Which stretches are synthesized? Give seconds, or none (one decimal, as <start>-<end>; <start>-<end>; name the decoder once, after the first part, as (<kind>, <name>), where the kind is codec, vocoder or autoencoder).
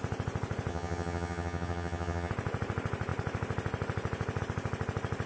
0.7-2.3 (vocoder, HiFi-GAN)